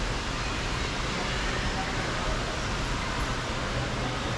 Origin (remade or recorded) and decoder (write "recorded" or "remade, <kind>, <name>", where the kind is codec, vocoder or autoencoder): recorded